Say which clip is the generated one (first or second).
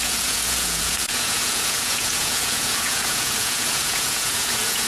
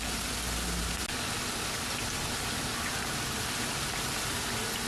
first